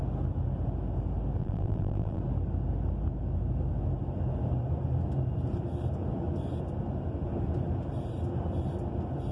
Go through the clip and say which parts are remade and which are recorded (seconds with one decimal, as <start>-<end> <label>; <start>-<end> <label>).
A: 0.0-1.4 recorded; 1.4-2.2 remade; 2.2-9.3 recorded